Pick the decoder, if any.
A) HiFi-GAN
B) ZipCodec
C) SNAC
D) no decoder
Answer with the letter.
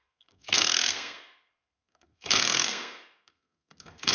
C